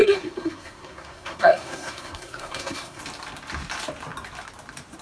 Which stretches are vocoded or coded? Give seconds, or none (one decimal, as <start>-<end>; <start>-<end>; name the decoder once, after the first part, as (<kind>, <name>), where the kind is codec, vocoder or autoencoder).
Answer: 0.0-3.0 (codec, SNAC)